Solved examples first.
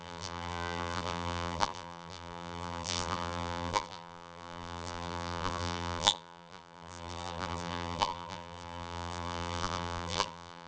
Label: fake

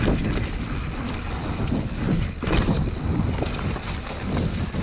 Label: real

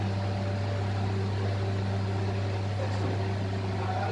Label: real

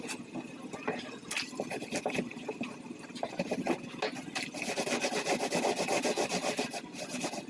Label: real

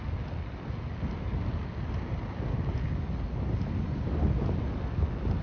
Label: real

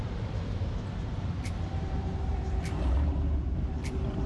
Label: fake